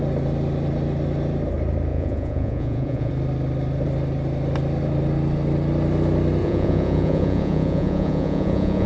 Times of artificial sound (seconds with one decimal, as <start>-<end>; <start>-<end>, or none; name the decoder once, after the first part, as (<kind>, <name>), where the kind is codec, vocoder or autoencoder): 1.9-3.1 (vocoder, Vocos); 6.4-8.9